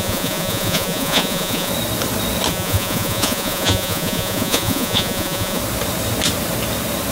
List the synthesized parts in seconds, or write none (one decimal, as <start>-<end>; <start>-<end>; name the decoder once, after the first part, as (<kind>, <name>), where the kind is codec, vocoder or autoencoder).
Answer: 0.0-1.7 (vocoder, Vocos); 2.5-5.6